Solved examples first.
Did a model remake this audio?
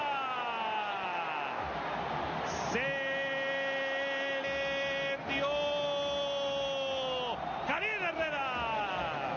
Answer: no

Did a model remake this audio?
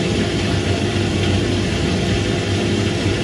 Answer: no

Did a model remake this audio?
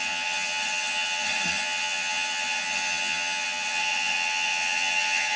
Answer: yes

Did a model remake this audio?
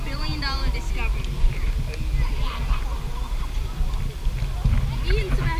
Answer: no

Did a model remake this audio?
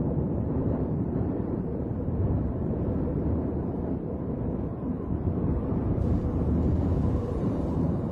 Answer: yes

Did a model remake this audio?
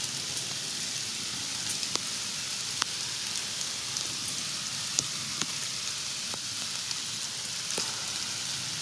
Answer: no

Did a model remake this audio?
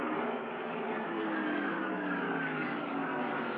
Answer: yes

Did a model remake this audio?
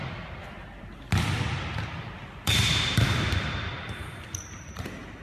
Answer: no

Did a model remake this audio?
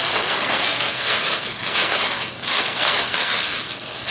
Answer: yes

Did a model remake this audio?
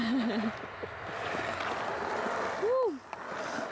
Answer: no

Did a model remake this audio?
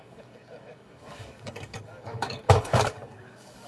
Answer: yes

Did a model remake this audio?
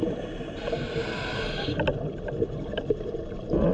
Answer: no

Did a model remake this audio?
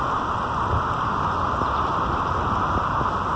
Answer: no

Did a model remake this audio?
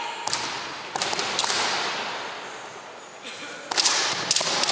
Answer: no